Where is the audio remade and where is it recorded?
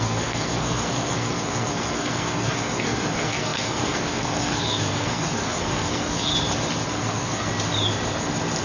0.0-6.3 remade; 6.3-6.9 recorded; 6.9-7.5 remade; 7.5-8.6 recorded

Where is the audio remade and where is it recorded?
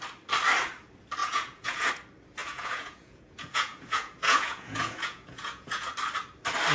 0.0-1.2 recorded; 1.2-1.9 remade; 1.9-2.4 recorded; 2.4-5.9 remade; 5.9-6.7 recorded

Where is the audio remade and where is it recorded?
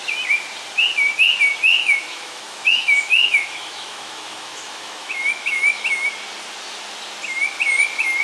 0.0-1.8 recorded; 1.8-6.1 remade; 6.1-8.2 recorded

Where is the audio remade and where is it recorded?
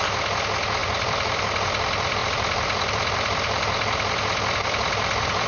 0.0-0.8 recorded; 0.8-1.4 remade; 1.4-2.2 recorded; 2.2-5.5 remade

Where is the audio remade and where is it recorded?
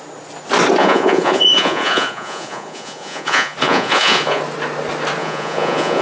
0.0-0.8 recorded; 0.8-4.4 remade; 4.4-5.2 recorded; 5.2-6.0 remade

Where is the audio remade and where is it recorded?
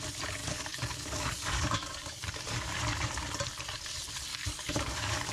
0.0-0.4 recorded; 0.4-2.3 remade; 2.3-4.3 recorded; 4.3-5.3 remade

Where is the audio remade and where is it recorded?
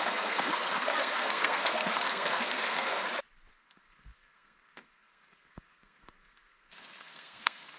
0.0-3.0 remade; 3.0-3.5 recorded; 3.5-7.8 remade